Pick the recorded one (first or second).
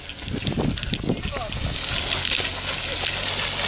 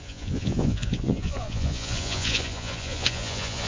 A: first